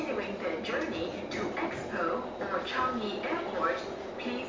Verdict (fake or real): real